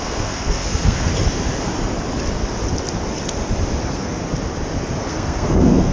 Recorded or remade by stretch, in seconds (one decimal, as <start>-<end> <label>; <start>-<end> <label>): 0.0-1.1 remade; 1.1-3.8 recorded; 3.8-4.2 remade; 4.2-5.0 recorded; 5.0-5.9 remade